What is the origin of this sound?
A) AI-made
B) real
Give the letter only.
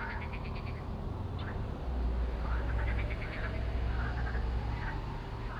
B